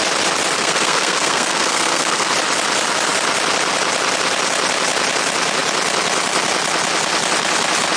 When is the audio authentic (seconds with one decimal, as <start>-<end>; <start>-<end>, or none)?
0.0-0.6; 2.3-8.0